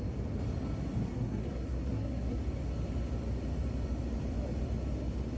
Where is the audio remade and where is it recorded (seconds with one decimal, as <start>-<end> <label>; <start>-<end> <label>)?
0.0-1.0 recorded; 1.0-2.4 remade; 2.4-5.4 recorded